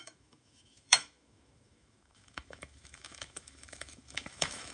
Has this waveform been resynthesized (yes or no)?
yes